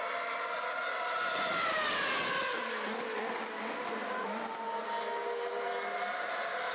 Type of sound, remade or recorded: recorded